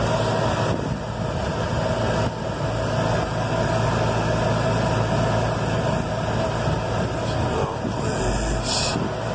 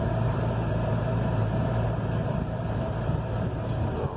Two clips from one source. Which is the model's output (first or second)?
second